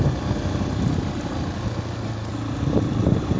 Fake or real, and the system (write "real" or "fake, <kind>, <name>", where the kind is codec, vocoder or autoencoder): real